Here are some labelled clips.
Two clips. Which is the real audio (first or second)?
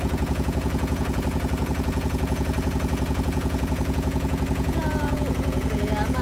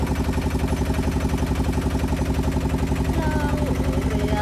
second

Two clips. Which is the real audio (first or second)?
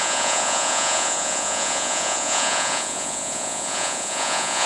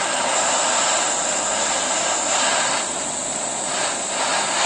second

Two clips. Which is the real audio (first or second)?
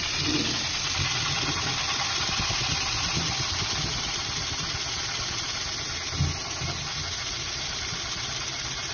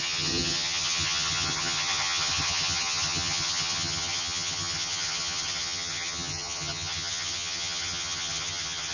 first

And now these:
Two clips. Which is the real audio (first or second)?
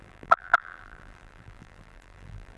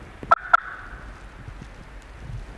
second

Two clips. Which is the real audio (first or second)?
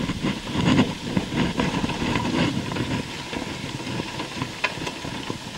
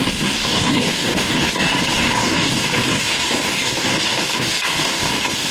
first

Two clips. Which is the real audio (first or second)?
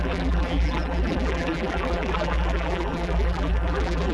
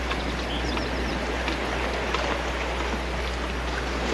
second